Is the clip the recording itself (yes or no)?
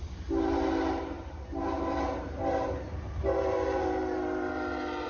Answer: no